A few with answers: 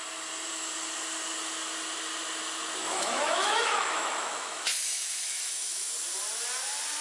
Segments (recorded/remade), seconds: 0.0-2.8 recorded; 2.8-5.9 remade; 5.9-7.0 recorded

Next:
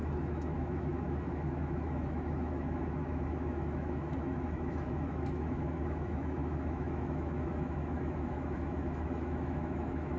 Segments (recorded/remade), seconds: 0.0-10.2 remade

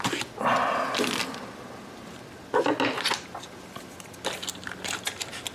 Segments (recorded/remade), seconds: 0.0-5.5 recorded

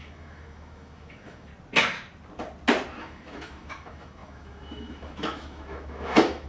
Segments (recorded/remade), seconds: 0.0-1.5 remade; 1.5-3.0 recorded; 3.0-6.5 remade

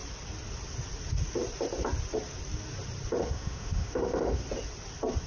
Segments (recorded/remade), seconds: 0.0-3.2 recorded; 3.2-4.4 remade; 4.4-5.3 recorded

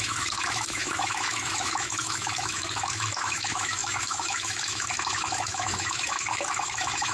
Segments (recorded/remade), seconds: 0.0-7.1 remade

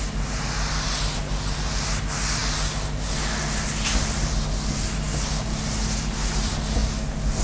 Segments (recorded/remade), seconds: 0.0-7.4 recorded

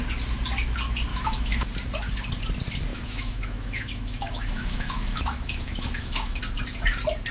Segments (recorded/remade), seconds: 0.0-1.1 recorded; 1.1-1.7 remade; 1.7-2.9 recorded; 2.9-6.4 remade; 6.4-7.3 recorded